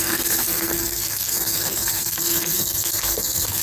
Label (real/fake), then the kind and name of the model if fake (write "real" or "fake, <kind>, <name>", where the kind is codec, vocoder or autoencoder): fake, codec, SNAC